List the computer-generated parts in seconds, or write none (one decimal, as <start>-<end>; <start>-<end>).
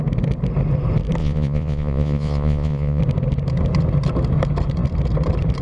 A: 1.2-3.0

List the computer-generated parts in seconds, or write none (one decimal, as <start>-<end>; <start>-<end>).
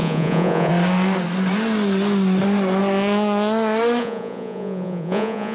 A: 0.0-0.7; 4.0-5.5